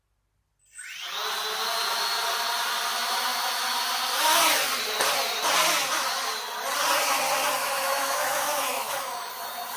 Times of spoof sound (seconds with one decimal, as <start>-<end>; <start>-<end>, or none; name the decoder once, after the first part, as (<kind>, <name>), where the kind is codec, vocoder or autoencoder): 7.6-9.3 (autoencoder, DAC-VAE)